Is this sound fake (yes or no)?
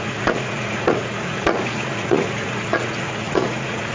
yes